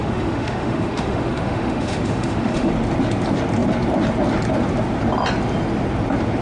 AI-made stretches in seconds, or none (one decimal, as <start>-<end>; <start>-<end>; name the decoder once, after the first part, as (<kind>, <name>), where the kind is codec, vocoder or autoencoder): 0.0-2.7 (autoencoder, DAC-VAE)